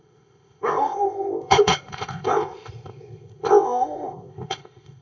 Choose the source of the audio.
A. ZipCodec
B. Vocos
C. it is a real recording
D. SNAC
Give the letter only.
A